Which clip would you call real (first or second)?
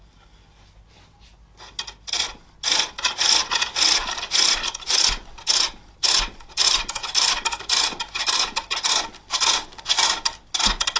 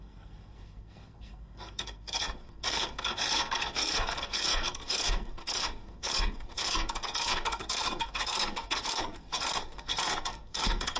first